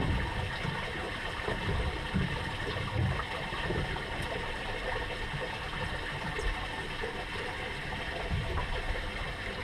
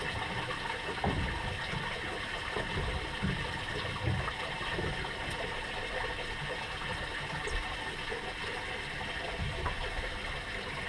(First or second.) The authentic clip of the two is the second